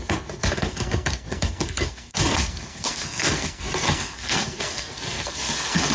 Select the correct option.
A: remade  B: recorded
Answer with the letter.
A